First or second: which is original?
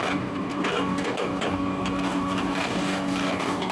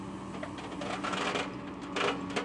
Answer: second